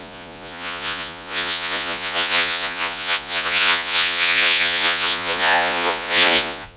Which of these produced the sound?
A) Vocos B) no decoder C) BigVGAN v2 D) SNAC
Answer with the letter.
A